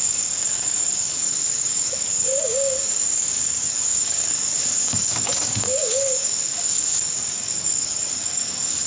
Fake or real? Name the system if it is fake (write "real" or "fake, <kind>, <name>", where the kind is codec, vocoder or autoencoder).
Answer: fake, codec, DAC